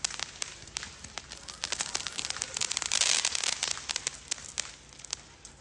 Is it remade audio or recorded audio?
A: recorded